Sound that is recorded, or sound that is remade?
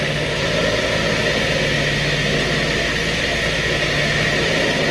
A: recorded